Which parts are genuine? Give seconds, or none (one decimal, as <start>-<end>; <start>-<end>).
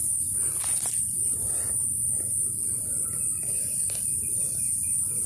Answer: 0.9-1.8